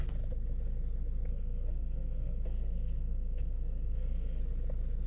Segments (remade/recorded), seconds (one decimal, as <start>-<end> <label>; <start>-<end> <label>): 0.0-1.3 recorded; 1.3-4.4 remade; 4.4-5.1 recorded